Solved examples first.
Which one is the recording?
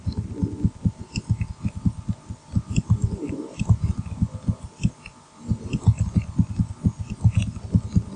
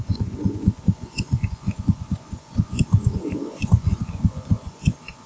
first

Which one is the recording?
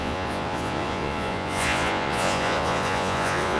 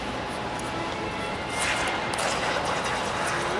second